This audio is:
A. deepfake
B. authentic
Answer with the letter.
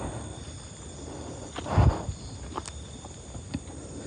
B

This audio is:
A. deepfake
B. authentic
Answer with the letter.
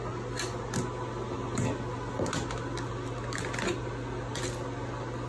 B